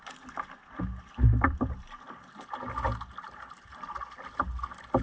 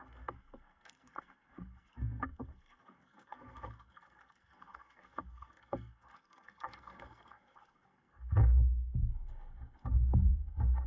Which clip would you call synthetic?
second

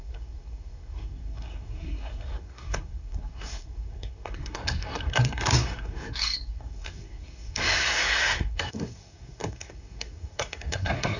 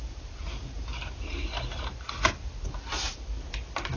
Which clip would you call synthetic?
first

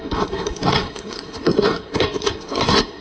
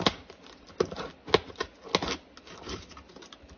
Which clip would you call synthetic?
first